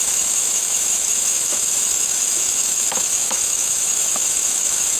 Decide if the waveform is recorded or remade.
remade